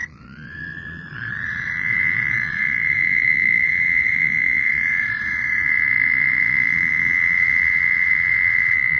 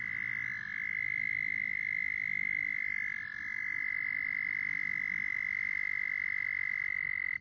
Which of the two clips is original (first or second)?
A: second